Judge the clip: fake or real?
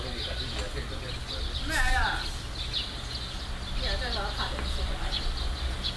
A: real